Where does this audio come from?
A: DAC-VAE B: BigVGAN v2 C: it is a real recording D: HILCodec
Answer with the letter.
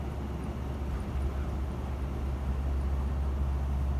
C